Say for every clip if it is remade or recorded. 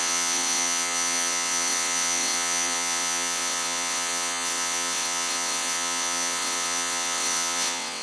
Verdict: remade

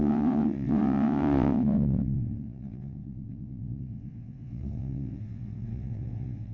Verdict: remade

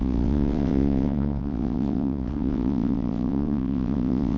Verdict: remade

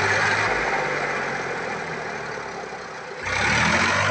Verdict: recorded